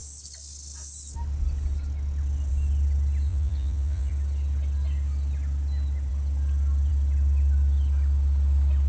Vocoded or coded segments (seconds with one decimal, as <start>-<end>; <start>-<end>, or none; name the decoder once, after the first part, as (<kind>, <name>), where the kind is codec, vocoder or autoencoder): 3.3-4.1 (vocoder, Vocos)